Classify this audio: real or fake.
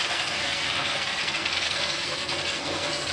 fake